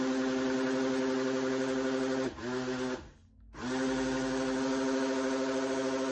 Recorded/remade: recorded